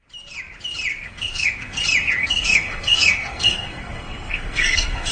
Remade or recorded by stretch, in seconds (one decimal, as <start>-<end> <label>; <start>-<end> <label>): 0.0-0.9 recorded; 0.9-1.8 remade; 1.8-2.2 recorded; 2.2-5.1 remade